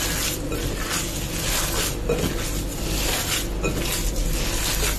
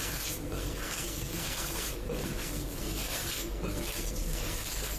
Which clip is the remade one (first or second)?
second